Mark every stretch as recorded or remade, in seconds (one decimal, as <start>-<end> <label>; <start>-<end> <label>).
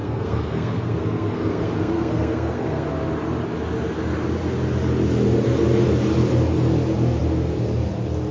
0.0-2.9 remade; 2.9-8.3 recorded